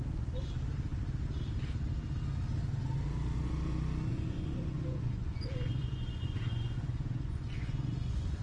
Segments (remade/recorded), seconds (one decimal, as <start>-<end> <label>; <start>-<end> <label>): 0.0-4.1 recorded; 4.1-8.4 remade